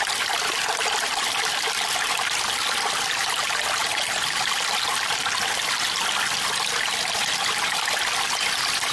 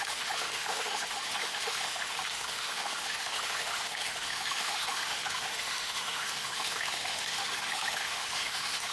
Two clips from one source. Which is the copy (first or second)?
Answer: second